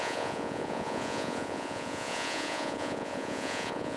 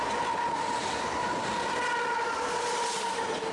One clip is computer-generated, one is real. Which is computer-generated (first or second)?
first